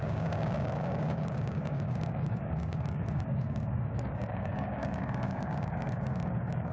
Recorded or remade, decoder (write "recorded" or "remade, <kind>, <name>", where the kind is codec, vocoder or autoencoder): remade, codec, DAC